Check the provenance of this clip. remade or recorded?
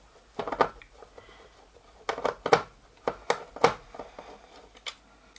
recorded